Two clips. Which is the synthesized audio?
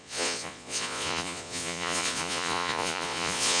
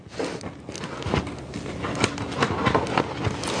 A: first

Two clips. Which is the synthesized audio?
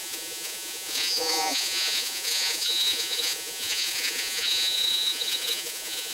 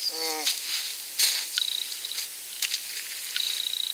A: first